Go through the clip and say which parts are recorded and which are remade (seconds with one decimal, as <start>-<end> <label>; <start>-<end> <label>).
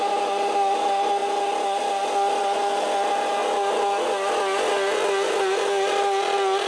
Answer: 0.0-6.7 recorded